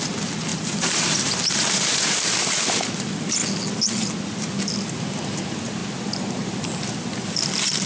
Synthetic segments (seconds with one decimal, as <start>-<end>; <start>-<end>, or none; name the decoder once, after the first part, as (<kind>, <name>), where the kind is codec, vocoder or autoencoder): 0.5-2.3 (vocoder, BigVGAN v2)